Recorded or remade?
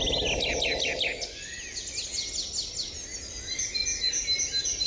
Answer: recorded